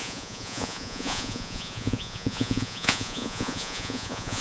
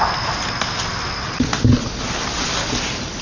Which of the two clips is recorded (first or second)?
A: second